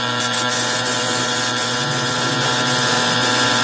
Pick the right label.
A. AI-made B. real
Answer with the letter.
A